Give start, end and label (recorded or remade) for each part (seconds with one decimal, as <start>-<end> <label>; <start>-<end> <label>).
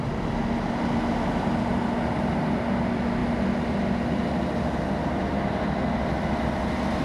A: 0.0-7.0 recorded